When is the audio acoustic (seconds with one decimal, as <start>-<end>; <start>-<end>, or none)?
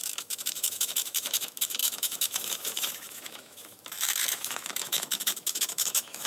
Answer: none